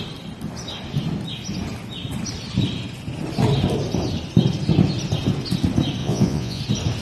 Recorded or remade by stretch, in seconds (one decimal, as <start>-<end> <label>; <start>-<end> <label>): 0.0-6.0 recorded; 6.0-6.6 remade; 6.6-7.0 recorded